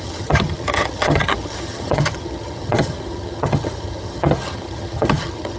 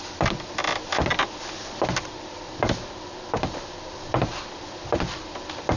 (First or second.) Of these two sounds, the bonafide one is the second